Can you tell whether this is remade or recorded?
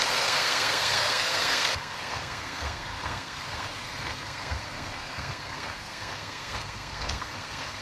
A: remade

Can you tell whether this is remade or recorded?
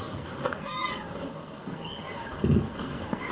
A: remade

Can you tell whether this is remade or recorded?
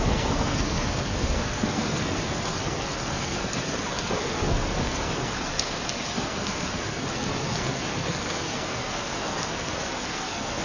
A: remade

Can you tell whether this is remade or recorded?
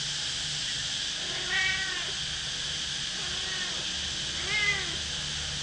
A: recorded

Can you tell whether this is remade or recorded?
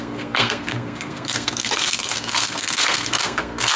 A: remade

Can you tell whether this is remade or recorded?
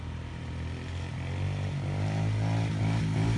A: recorded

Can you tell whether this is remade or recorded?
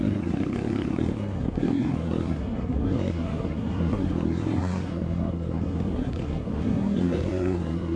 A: remade